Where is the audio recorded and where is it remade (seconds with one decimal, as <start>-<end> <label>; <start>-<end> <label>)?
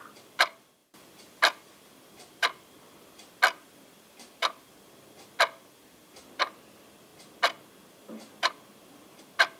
0.0-9.6 recorded